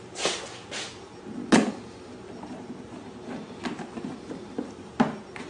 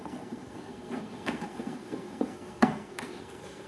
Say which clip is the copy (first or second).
second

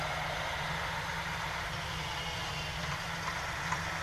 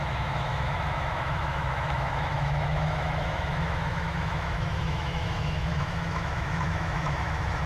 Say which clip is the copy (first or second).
second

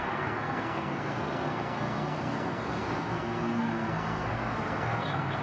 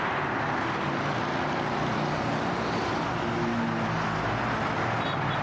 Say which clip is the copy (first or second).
first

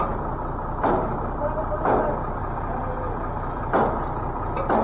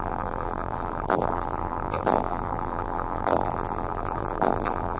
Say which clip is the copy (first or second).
second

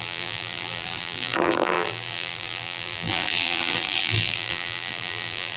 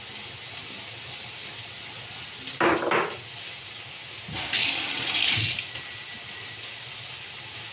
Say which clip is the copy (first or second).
first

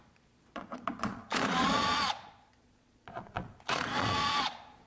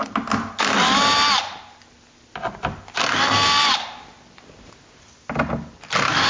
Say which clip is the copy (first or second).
first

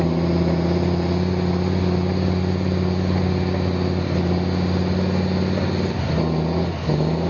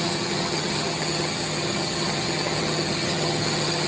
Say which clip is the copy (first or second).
second